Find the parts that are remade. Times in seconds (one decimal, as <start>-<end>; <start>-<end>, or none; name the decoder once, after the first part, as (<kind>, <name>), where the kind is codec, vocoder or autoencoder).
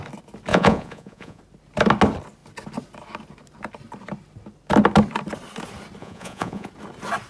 0.5-1.4 (vocoder, Vocos); 6.0-6.7